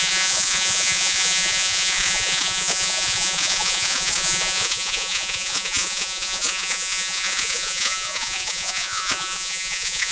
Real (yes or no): no